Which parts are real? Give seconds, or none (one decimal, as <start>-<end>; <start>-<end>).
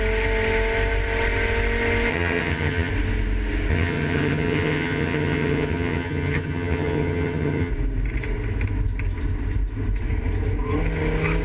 0.0-2.1; 2.9-3.7; 7.7-11.4